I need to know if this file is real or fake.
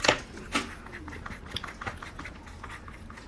real